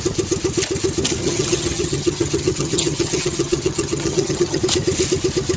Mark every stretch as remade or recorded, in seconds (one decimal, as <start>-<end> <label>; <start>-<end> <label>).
0.0-1.2 recorded; 1.2-4.6 remade; 4.6-5.6 recorded

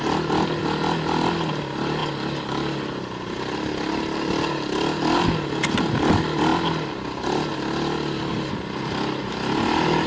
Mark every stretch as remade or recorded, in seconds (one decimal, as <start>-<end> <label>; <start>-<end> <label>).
0.0-10.1 recorded